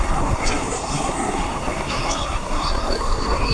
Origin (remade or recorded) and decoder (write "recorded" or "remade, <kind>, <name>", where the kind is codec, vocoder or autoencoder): remade, codec, SNAC